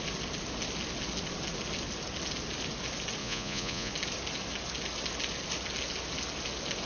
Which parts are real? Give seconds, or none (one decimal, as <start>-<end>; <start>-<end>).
0.0-3.2; 3.9-6.9